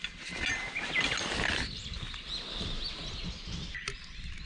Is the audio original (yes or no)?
yes